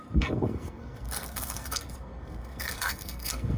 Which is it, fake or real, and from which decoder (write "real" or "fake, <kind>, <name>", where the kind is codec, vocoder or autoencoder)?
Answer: fake, codec, SNAC